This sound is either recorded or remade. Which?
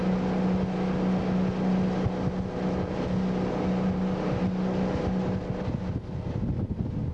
recorded